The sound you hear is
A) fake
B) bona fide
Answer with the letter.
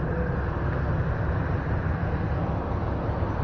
B